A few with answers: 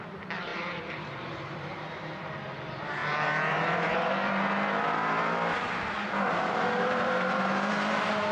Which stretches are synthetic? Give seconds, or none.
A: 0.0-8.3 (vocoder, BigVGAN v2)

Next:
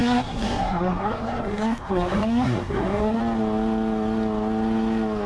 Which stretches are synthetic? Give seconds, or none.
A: 0.0-3.2 (codec, SNAC)

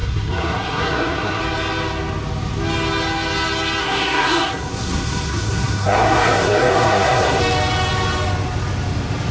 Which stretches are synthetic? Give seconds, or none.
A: 0.0-1.4 (codec, SNAC); 3.8-7.4

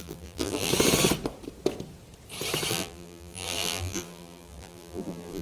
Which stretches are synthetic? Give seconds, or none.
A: 0.0-0.7 (vocoder, BigVGAN v2); 2.7-5.4

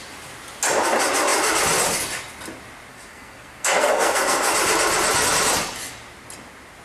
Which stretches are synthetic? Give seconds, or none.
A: 2.9-4.5 (codec, SNAC)